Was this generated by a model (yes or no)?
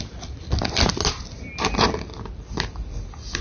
no